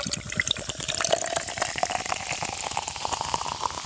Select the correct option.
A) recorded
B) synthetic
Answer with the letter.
A